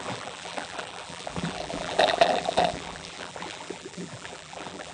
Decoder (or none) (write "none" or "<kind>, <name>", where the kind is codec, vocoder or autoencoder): vocoder, BigVGAN v2